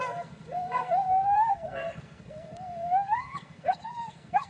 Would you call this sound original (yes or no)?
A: no